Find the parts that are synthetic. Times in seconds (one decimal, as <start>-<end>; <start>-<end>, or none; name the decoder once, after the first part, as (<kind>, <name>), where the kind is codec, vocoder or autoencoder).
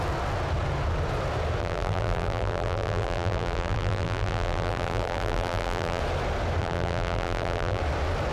1.6-6.0 (vocoder, BigVGAN v2); 6.6-7.8